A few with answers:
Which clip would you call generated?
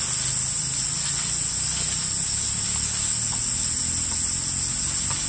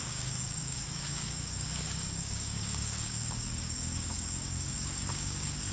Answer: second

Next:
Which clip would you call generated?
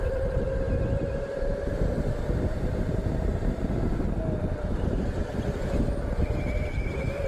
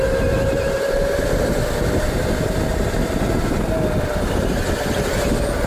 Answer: first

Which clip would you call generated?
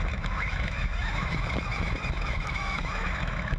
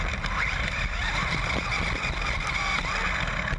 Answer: first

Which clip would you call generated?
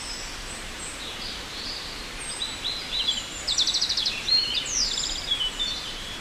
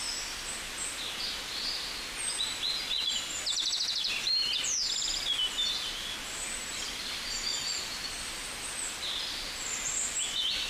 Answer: first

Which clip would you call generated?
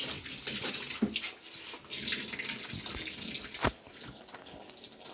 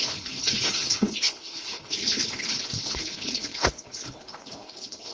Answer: second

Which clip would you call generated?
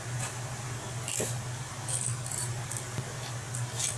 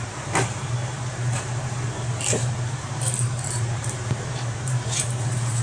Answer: second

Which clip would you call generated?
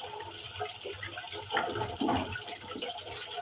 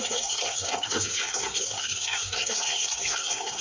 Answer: second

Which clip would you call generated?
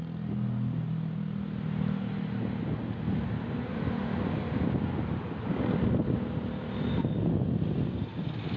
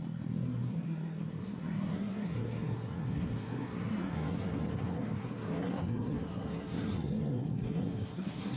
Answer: second